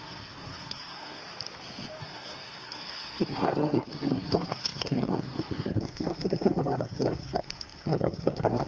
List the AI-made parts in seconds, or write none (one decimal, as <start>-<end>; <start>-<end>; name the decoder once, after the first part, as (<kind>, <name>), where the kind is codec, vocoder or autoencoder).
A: 0.0-1.2 (codec, SNAC); 2.0-8.7